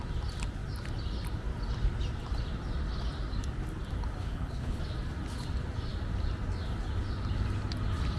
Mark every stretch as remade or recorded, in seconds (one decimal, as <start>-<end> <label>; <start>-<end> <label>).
0.0-4.2 recorded; 4.2-4.8 remade; 4.8-8.2 recorded